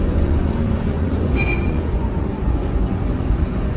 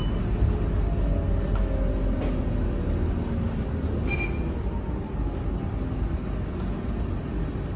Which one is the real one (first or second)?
second